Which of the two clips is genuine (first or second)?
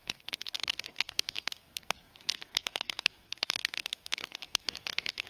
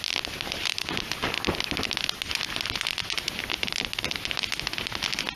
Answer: second